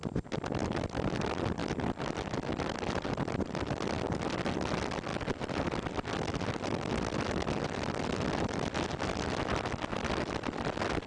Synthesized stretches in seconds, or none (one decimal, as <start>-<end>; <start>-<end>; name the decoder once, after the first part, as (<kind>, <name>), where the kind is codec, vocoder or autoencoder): none